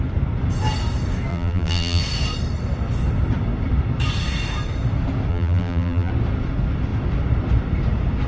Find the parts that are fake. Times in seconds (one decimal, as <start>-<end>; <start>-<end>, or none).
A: 1.3-2.0; 5.3-6.1